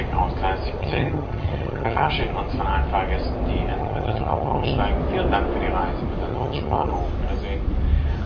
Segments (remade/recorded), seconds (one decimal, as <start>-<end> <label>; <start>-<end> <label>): 0.0-0.8 recorded; 0.8-2.1 remade; 2.1-3.8 recorded; 3.8-4.8 remade; 4.8-6.3 recorded; 6.3-6.9 remade; 6.9-8.3 recorded